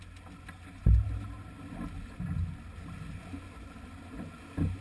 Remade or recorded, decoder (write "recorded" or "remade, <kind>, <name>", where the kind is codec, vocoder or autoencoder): recorded